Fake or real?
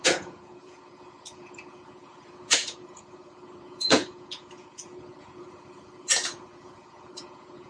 fake